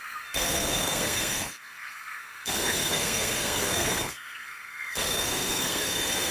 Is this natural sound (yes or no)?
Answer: no